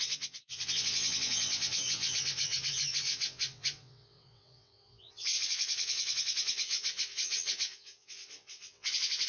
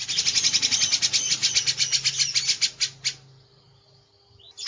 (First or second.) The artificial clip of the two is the first